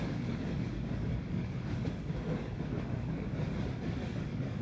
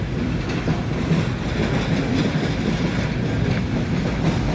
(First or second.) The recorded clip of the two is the second